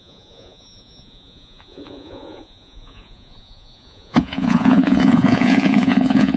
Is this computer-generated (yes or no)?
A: yes